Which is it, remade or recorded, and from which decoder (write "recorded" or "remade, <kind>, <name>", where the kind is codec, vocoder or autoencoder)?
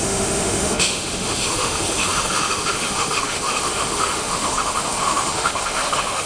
remade, autoencoder, DAC-VAE